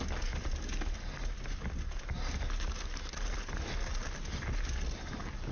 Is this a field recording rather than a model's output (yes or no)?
yes